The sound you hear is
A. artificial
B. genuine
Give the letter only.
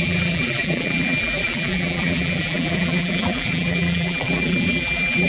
A